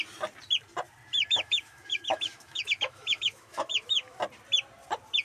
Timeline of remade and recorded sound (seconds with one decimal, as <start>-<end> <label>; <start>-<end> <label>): 0.0-1.1 recorded; 1.1-4.2 remade; 4.2-5.2 recorded